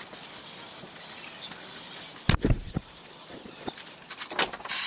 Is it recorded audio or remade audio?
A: remade